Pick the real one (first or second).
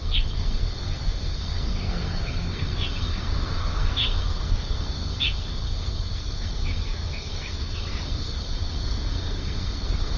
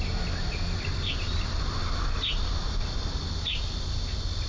second